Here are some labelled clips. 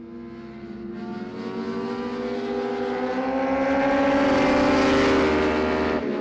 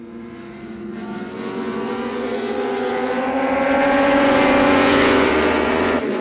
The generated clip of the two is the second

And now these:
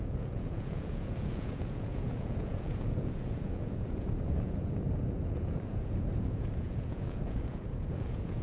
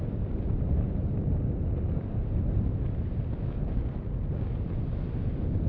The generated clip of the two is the first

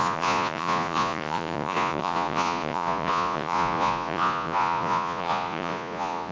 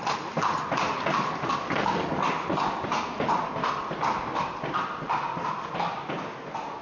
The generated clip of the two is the first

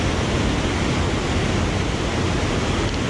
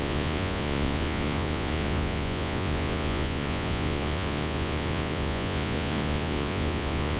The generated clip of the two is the second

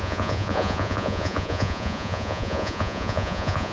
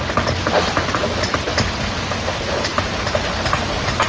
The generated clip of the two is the first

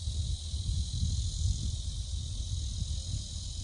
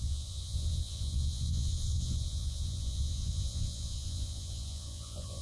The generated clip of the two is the second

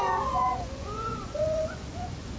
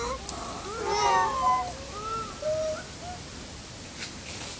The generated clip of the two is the first